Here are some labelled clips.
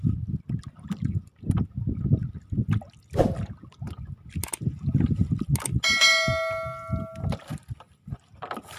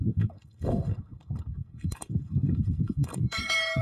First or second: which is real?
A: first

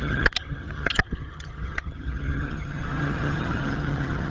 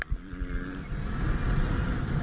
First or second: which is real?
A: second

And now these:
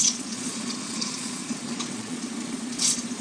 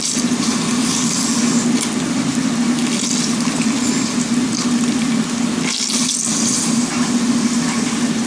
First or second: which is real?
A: second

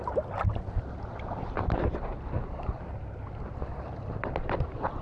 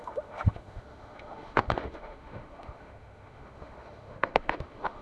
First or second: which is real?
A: first